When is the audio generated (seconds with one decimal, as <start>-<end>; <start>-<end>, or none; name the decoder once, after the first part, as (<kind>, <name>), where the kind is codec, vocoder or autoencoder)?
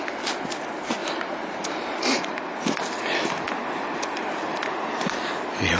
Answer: none